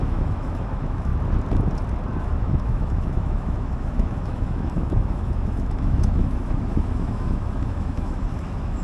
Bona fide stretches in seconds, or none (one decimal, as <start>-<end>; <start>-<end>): 1.1-2.2